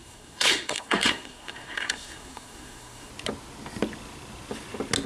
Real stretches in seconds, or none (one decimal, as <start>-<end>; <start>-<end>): 3.1-5.1